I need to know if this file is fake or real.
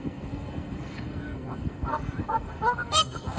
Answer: fake